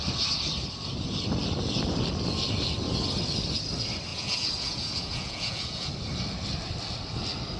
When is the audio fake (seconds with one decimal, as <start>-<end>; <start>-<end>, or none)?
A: 4.1-5.9